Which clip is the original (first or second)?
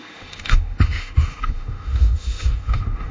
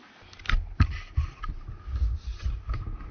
second